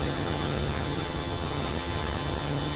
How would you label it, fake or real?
fake